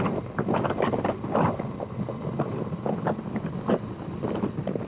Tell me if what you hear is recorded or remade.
remade